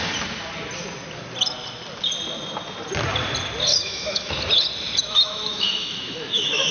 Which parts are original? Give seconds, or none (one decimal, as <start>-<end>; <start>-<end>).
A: 0.0-3.7; 4.3-5.0